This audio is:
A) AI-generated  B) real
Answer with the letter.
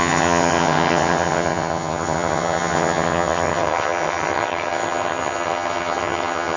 A